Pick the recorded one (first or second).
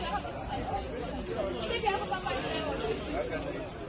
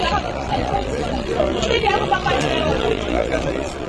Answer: first